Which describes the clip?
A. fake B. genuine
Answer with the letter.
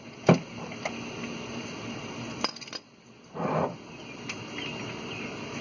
B